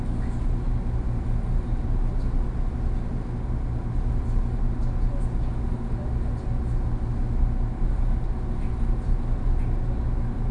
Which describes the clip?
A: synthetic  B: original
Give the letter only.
B